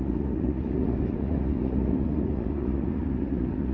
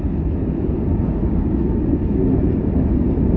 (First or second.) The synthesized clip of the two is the first